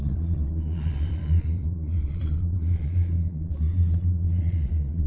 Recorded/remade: remade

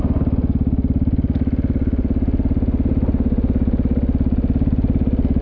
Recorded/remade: recorded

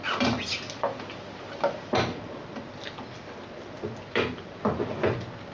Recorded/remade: recorded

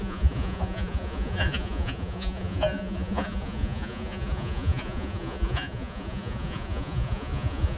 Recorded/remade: remade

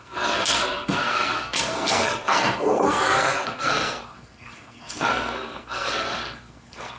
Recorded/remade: remade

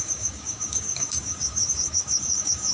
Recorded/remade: remade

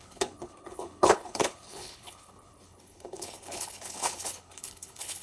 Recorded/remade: remade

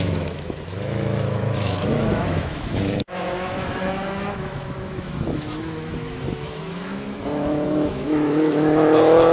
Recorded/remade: remade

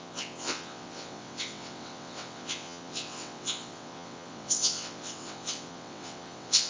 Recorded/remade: remade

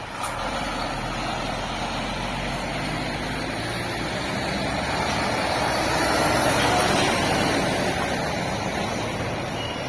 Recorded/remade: recorded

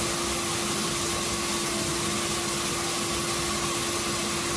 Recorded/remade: recorded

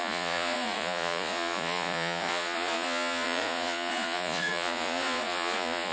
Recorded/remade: remade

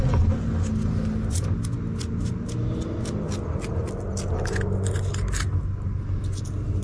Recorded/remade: recorded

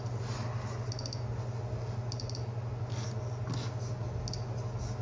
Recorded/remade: recorded